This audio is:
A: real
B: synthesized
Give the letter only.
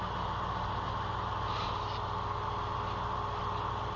A